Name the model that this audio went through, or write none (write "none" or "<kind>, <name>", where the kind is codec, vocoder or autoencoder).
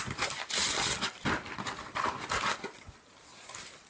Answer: none